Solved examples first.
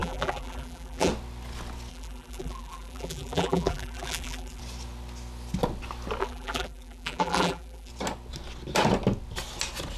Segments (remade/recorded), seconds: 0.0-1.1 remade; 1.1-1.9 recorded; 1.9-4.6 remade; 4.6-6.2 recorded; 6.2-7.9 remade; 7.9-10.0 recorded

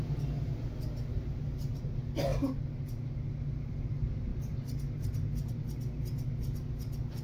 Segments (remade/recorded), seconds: 0.0-1.1 recorded; 1.1-1.8 remade; 1.8-4.3 recorded; 4.3-5.5 remade; 5.5-7.2 recorded